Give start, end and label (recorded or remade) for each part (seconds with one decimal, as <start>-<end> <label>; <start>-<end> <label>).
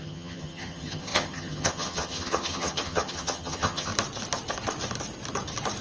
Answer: 0.0-3.9 remade; 3.9-5.8 recorded